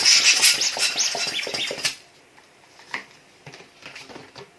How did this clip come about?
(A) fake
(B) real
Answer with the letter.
B